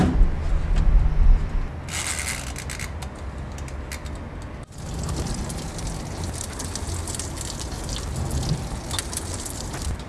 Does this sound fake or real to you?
real